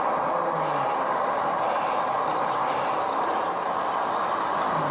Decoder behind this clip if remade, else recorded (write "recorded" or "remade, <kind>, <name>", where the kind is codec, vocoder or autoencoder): recorded